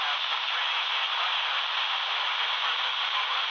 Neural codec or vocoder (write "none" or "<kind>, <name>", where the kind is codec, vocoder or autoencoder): none